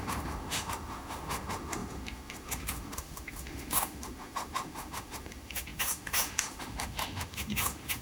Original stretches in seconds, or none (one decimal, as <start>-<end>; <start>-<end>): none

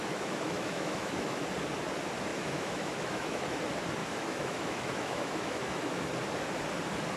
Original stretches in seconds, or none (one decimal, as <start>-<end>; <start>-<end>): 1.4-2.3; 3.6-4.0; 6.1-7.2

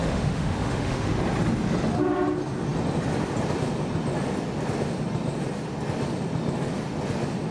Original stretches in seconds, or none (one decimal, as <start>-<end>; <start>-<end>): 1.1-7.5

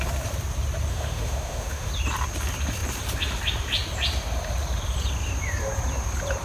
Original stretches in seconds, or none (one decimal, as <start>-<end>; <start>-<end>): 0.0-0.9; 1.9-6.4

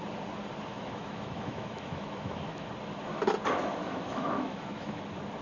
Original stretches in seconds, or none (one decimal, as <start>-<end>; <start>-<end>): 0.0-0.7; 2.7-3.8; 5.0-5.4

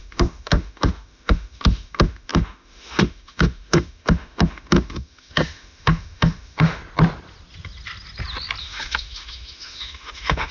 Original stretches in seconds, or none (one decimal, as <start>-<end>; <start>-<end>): 6.8-8.6

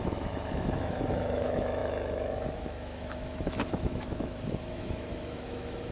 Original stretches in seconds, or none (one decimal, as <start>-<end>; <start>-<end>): none

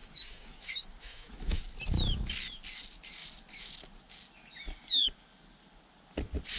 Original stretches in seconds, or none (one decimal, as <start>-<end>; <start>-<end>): 1.6-6.6